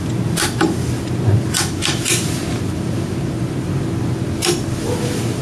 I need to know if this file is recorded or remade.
recorded